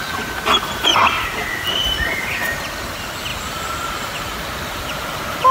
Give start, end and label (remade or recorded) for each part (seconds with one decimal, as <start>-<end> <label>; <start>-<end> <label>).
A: 0.0-5.5 recorded